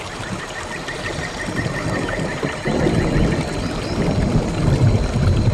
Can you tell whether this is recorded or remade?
recorded